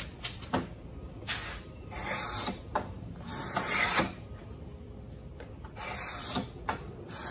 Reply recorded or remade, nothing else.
recorded